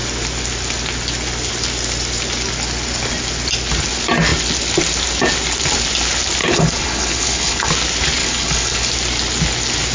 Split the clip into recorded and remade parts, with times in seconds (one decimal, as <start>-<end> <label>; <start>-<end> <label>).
0.0-6.4 recorded; 6.4-7.7 remade; 7.7-8.2 recorded; 8.2-8.9 remade; 8.9-9.9 recorded